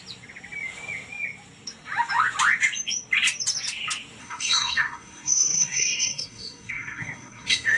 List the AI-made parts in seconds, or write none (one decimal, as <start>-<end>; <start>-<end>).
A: 4.2-7.8